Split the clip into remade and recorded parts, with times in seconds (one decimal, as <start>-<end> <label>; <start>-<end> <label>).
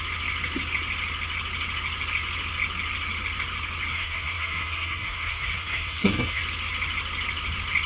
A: 0.0-3.9 recorded; 3.9-6.4 remade; 6.4-7.9 recorded